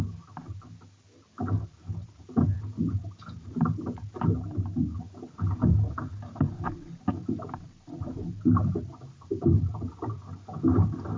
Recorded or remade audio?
recorded